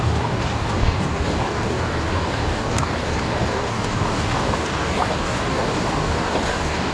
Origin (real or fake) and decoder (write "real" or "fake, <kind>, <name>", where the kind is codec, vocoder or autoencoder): fake, codec, DAC